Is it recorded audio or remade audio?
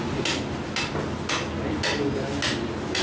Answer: recorded